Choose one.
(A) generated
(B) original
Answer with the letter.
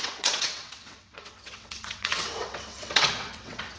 A